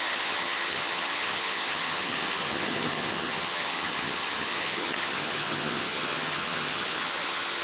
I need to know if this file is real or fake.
fake